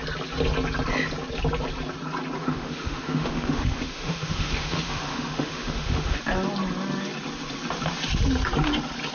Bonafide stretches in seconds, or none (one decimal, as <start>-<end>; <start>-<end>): 0.0-2.4; 6.2-9.1